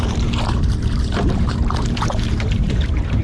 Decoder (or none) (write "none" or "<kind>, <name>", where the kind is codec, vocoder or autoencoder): vocoder, BigVGAN v2